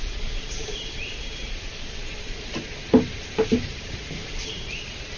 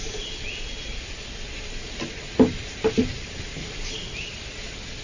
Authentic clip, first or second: second